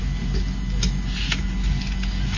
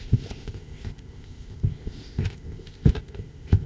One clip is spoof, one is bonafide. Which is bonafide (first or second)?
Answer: first